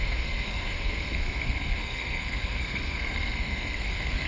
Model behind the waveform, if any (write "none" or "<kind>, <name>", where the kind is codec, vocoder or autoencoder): codec, SNAC